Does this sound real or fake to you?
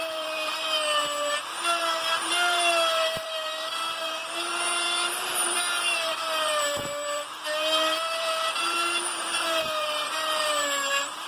fake